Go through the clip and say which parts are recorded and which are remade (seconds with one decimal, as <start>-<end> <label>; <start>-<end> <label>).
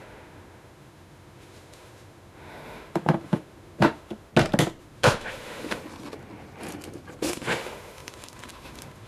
0.0-4.3 remade; 4.3-4.8 recorded; 4.8-5.8 remade; 5.8-7.2 recorded; 7.2-9.1 remade